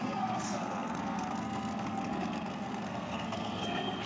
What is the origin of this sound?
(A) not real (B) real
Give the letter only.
A